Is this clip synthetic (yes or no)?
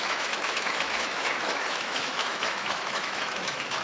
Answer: yes